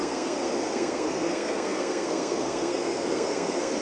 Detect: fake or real fake